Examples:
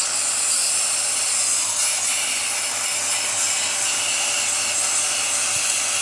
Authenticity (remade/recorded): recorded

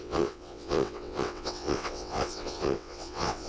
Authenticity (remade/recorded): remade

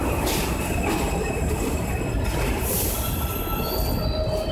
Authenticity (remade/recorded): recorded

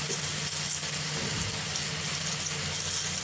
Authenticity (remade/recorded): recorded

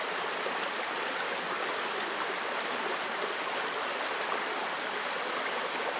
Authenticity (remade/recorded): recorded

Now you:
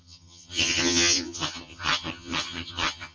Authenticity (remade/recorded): remade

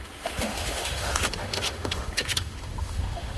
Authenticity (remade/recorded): remade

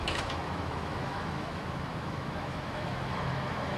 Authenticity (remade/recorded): remade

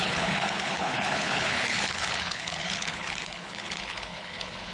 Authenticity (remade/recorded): remade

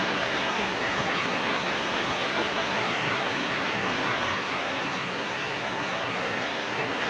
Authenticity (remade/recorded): remade